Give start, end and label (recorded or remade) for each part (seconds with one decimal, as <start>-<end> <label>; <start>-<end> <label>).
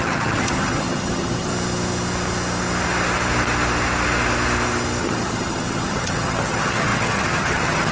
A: 0.0-1.5 remade; 1.5-5.0 recorded; 5.0-7.9 remade